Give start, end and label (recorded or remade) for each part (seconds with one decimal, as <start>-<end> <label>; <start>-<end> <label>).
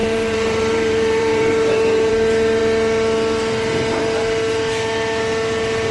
0.0-2.1 remade; 2.1-5.9 recorded